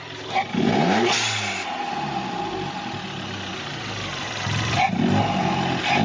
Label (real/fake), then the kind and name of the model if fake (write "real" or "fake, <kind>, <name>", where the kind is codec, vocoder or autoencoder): real